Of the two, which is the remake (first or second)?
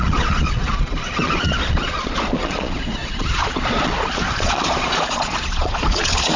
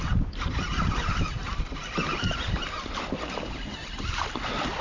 first